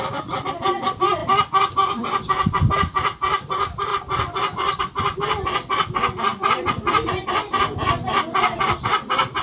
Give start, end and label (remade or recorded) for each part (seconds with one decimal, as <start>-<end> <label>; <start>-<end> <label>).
0.0-3.9 remade; 3.9-4.8 recorded; 4.8-9.4 remade